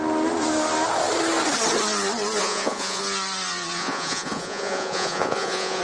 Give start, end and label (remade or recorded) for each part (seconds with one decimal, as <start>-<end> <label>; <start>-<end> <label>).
0.0-2.4 recorded; 2.4-3.0 remade; 3.0-3.8 recorded; 3.8-5.8 remade